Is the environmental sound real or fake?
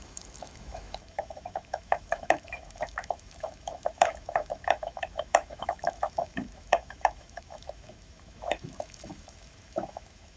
fake